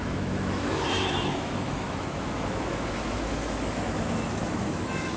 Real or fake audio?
fake